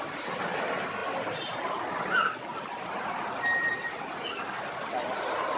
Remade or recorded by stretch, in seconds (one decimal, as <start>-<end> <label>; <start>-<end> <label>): 0.0-5.6 recorded